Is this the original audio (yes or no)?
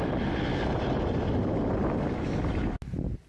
yes